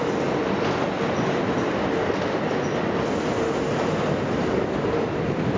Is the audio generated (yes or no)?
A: no